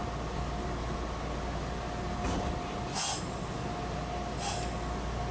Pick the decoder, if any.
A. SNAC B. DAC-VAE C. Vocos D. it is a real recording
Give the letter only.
D